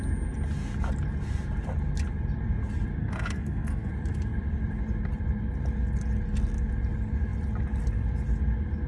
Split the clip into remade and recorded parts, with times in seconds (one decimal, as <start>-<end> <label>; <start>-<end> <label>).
0.0-3.0 recorded; 3.0-3.9 remade; 3.9-8.9 recorded